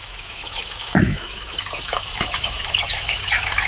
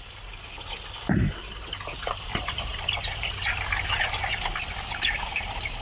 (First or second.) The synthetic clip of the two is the first